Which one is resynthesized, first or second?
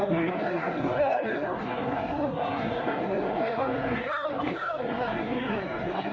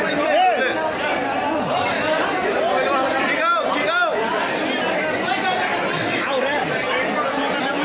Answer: first